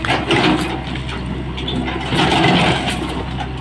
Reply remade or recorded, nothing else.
recorded